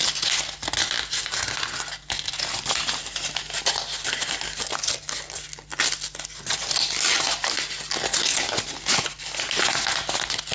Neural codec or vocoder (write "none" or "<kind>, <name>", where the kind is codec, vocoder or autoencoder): none